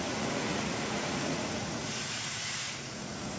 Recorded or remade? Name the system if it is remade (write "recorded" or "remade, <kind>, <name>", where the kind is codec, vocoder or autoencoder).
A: remade, vocoder, Vocos